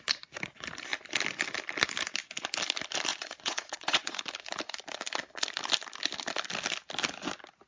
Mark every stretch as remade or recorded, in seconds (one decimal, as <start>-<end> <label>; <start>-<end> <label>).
0.0-3.1 recorded; 3.1-4.2 remade; 4.2-7.7 recorded